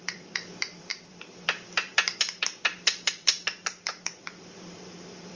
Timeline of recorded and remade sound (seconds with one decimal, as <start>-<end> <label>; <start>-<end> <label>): 0.0-5.3 remade